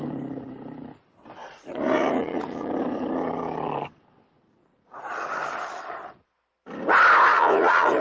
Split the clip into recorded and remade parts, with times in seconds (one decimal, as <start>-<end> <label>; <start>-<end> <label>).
0.0-1.4 recorded; 1.4-2.7 remade; 2.7-4.7 recorded; 4.7-5.6 remade; 5.6-7.3 recorded; 7.3-8.0 remade